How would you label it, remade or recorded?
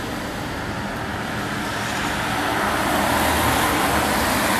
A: recorded